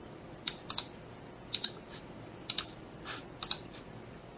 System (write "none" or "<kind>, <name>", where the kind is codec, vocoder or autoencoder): none